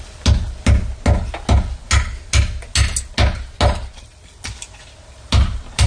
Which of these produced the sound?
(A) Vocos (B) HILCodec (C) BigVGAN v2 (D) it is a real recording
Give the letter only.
D